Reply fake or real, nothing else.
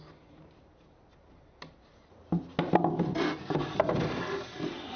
real